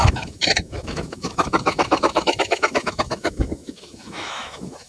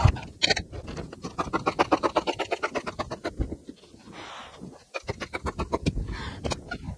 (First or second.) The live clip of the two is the second